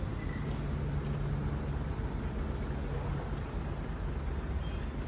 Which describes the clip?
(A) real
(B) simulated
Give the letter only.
A